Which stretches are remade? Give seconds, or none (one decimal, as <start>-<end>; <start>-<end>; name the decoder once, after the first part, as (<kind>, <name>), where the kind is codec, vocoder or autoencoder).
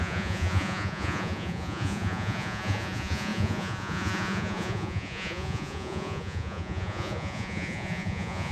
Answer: 0.0-8.5 (vocoder, Vocos)